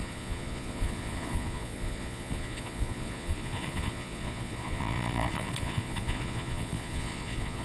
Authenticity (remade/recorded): remade